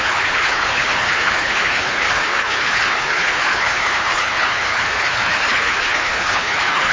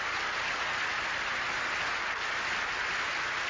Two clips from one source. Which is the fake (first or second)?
first